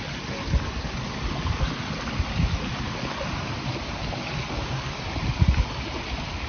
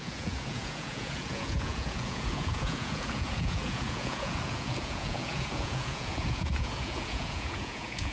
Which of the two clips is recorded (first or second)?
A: first